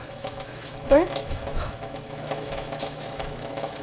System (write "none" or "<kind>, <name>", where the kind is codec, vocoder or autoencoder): autoencoder, DAC-VAE